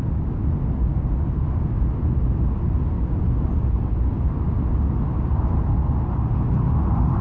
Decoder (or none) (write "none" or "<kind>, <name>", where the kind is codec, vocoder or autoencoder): none